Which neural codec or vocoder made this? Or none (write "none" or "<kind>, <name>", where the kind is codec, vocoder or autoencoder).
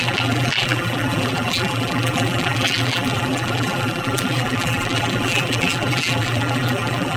vocoder, BigVGAN v2